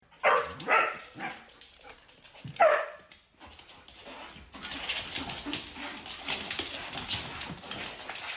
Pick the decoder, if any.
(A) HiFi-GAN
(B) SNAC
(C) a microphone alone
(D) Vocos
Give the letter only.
C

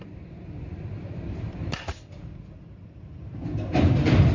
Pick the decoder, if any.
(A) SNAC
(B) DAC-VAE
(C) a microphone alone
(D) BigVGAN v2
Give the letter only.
D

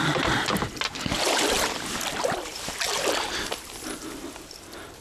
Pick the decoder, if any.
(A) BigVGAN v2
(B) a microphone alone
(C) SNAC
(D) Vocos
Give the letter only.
B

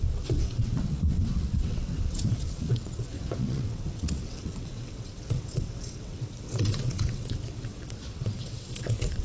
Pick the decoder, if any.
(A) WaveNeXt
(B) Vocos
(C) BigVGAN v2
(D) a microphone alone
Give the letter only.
A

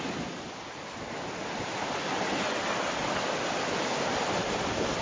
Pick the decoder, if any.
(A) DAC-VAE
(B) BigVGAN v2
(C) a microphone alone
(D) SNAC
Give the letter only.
C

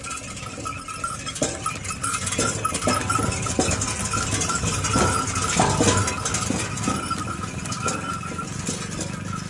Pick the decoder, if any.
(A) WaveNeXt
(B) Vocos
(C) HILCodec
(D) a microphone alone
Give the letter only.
D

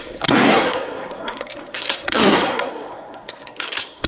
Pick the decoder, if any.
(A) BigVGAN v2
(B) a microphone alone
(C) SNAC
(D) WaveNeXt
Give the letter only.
C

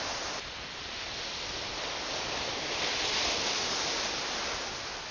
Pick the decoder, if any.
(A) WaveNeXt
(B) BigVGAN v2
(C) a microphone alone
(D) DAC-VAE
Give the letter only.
C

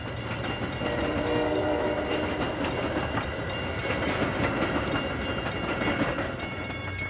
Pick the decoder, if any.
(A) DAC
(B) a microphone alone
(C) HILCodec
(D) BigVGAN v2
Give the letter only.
B